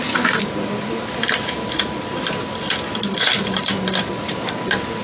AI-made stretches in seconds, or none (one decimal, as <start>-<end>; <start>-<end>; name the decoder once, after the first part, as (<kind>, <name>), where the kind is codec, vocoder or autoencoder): none